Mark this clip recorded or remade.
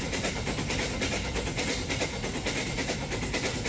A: recorded